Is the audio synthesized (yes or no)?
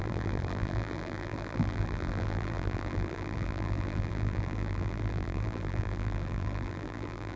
yes